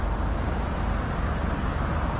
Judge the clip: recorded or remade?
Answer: recorded